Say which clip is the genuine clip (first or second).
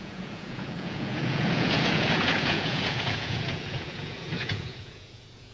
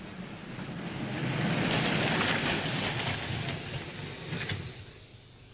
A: second